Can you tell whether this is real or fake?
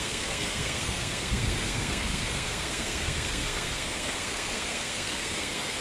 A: fake